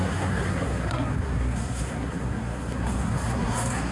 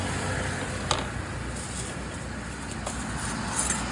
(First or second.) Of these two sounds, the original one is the second